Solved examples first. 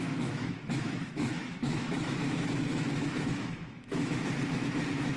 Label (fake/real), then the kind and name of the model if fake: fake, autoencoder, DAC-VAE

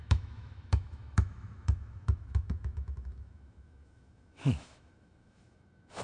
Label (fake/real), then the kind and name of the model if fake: fake, autoencoder, DAC-VAE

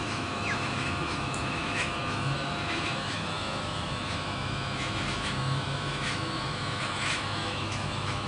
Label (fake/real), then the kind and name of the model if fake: fake, autoencoder, DAC-VAE